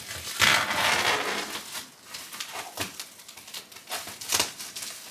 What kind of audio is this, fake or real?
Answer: real